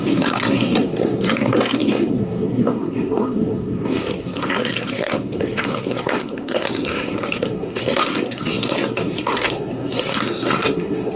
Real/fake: fake